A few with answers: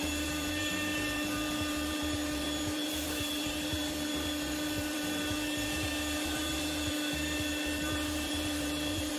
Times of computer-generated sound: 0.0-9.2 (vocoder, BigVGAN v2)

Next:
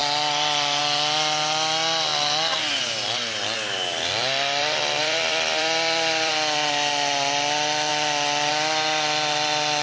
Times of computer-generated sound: 0.0-0.8 (vocoder, BigVGAN v2); 3.9-6.3

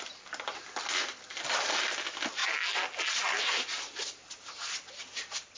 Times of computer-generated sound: 0.0-2.4 (vocoder, BigVGAN v2); 3.5-5.6

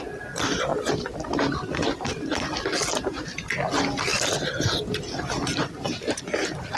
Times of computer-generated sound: 0.0-4.1 (vocoder, BigVGAN v2); 5.0-6.8

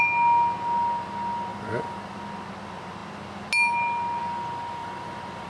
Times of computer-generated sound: 1.5-2.2 (vocoder, BigVGAN v2); 4.8-5.5